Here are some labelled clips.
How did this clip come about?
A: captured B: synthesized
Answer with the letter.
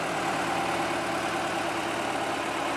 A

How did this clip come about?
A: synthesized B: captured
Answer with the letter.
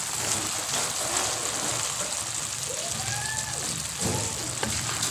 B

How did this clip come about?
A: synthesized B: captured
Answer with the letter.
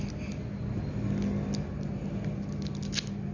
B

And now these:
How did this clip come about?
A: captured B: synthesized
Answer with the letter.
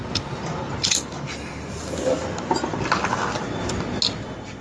A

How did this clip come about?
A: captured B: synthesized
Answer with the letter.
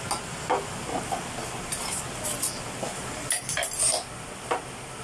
A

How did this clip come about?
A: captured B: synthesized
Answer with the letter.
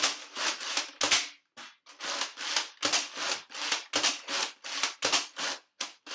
A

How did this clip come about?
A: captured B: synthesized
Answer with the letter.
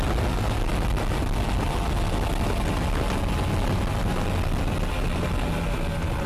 A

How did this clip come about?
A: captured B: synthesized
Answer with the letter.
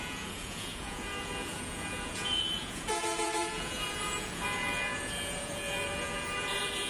B